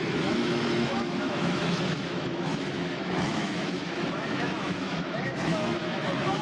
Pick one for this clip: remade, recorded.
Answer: remade